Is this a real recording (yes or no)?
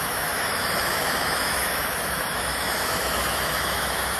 no